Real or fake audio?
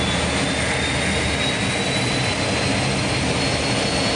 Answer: real